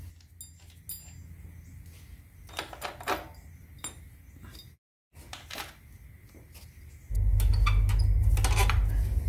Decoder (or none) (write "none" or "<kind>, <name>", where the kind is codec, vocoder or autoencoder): none